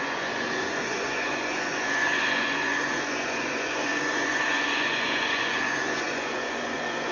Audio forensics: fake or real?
fake